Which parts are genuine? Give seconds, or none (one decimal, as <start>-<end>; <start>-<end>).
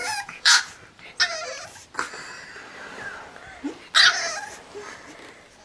0.6-5.6